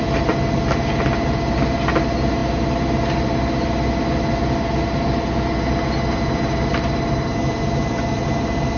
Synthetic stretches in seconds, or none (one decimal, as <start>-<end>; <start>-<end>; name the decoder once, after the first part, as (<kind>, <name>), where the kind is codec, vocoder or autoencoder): none